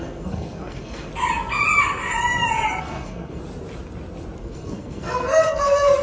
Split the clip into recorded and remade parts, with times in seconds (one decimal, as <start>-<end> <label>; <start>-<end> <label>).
0.0-1.1 remade; 1.1-2.8 recorded; 2.8-3.4 remade; 3.4-4.4 recorded; 4.4-6.0 remade